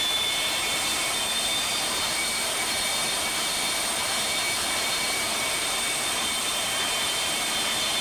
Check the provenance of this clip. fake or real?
fake